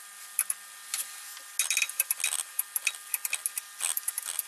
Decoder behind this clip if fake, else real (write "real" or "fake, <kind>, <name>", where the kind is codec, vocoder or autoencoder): real